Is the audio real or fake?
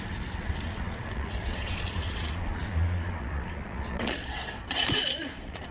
fake